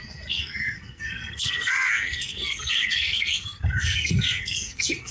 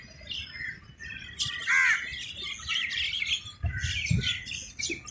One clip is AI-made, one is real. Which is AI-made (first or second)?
first